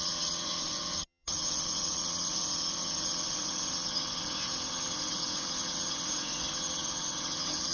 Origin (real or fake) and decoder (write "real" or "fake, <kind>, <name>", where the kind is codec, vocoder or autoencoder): fake, vocoder, HiFi-GAN